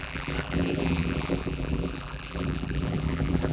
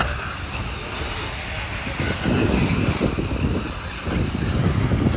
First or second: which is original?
second